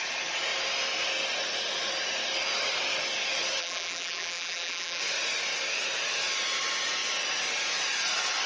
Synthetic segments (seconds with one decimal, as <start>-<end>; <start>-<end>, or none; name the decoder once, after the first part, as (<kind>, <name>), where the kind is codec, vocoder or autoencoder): 3.6-5.0 (vocoder, BigVGAN v2)